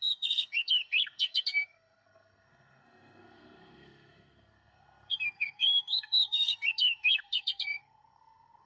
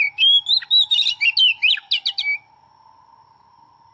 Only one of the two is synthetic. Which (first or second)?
first